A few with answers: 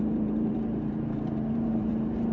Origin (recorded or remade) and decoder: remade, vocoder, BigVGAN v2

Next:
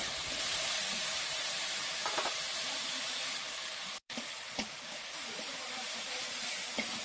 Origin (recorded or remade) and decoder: remade, vocoder, BigVGAN v2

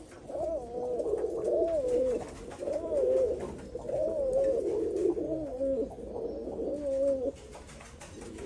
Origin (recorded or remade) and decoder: recorded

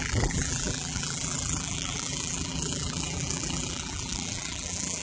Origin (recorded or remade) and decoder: remade, vocoder, BigVGAN v2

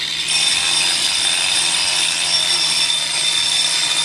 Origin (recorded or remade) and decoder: recorded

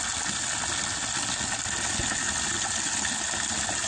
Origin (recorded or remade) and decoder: recorded